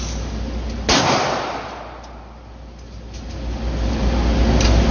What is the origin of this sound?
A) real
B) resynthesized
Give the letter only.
A